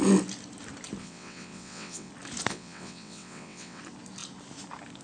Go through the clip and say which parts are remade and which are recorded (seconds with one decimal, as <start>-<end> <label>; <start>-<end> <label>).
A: 0.0-1.0 recorded; 1.0-2.1 remade; 2.1-2.5 recorded; 2.5-3.8 remade; 3.8-5.0 recorded